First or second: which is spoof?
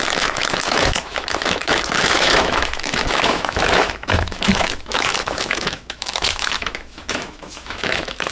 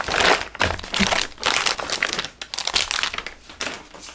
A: first